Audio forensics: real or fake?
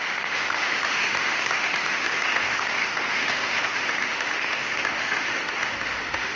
fake